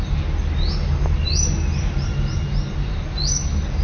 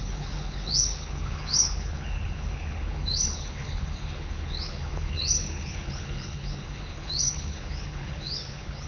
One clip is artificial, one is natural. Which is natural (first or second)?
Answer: first